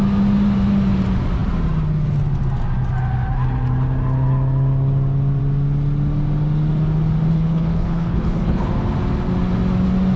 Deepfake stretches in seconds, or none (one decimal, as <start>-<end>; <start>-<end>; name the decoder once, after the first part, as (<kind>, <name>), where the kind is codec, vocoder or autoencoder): 7.3-8.7 (codec, HILCodec)